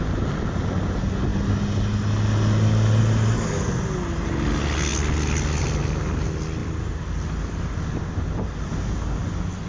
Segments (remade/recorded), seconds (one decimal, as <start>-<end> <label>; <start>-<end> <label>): 0.0-9.7 recorded